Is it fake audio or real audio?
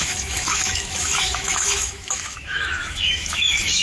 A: fake